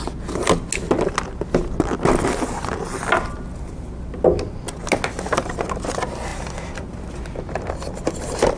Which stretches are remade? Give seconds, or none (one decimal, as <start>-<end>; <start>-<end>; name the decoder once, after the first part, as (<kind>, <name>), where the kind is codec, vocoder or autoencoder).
none